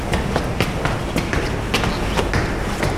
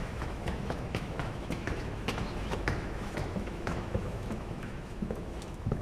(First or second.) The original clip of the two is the first